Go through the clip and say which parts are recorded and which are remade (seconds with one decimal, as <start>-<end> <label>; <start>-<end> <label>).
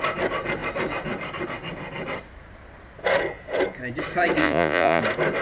0.0-4.4 recorded; 4.4-5.0 remade; 5.0-5.4 recorded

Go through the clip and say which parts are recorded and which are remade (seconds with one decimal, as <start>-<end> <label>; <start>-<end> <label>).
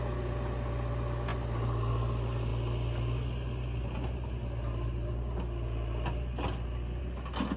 0.0-7.6 recorded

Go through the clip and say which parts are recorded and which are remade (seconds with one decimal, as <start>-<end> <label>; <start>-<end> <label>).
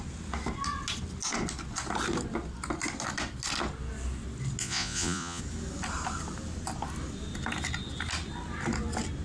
0.0-4.6 recorded; 4.6-5.4 remade; 5.4-9.2 recorded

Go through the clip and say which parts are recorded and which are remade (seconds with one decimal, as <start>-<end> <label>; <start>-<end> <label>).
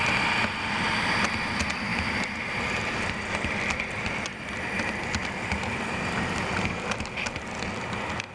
0.0-8.3 recorded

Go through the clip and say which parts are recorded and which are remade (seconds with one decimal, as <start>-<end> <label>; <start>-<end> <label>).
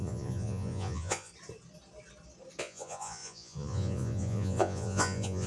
0.0-1.3 remade; 1.3-2.6 recorded; 2.6-5.5 remade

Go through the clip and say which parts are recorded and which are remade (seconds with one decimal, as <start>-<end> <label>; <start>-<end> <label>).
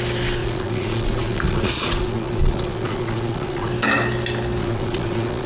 0.0-0.4 recorded; 0.4-3.7 remade; 3.7-4.6 recorded; 4.6-5.5 remade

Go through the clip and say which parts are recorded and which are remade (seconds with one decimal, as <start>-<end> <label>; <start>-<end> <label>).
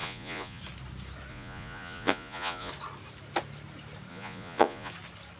0.0-0.6 remade; 0.6-1.3 recorded; 1.3-2.7 remade; 2.7-4.1 recorded; 4.1-4.9 remade; 4.9-5.4 recorded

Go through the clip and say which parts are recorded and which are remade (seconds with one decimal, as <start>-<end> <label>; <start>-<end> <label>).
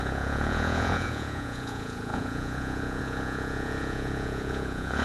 0.0-5.0 remade